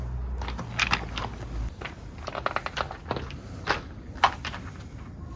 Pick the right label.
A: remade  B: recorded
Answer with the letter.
B